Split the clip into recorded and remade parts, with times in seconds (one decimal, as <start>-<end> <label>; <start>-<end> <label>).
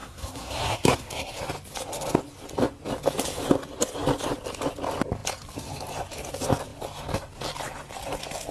0.0-1.4 remade; 1.4-8.5 recorded